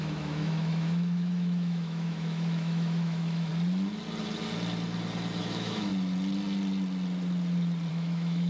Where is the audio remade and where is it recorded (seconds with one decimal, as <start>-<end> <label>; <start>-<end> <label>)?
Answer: 0.0-3.5 remade; 3.5-5.4 recorded; 5.4-5.9 remade; 5.9-7.9 recorded; 7.9-8.5 remade